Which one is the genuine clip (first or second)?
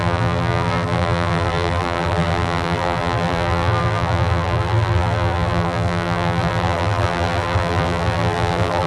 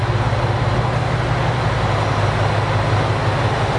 second